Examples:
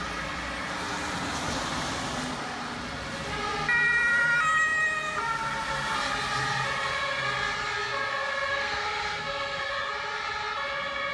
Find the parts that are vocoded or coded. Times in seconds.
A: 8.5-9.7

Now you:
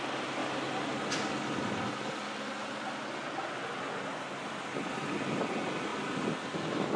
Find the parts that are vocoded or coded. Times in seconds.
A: none

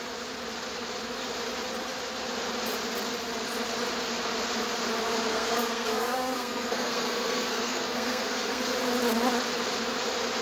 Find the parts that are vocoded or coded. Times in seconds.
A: 5.3-8.6

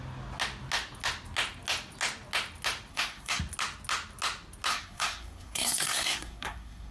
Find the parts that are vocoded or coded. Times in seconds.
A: 2.9-3.4; 4.7-6.9

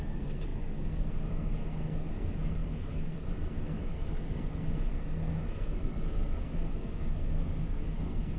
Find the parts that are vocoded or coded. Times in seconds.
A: 0.0-8.4

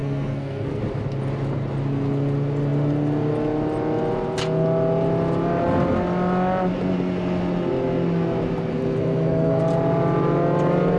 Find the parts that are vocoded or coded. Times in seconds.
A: 0.0-0.8; 8.7-9.6

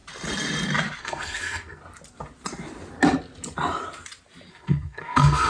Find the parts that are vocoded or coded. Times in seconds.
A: 1.0-1.8; 4.5-5.5